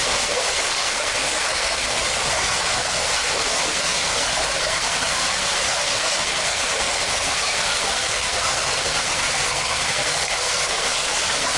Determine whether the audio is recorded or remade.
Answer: remade